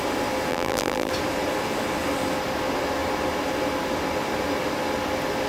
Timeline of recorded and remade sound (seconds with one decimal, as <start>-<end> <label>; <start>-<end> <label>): 0.0-0.5 recorded; 0.5-1.1 remade; 1.1-5.5 recorded